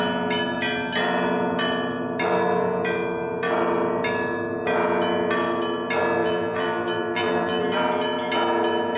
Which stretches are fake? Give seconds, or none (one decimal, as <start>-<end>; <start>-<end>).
6.2-7.6